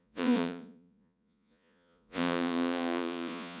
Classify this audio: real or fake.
fake